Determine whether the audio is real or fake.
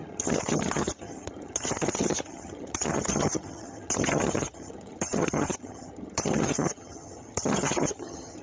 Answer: fake